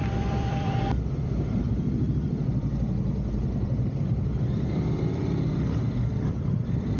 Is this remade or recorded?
remade